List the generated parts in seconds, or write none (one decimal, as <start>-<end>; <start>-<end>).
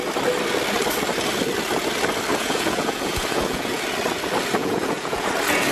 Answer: 2.3-3.8; 4.6-5.3